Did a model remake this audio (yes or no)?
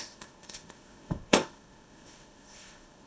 yes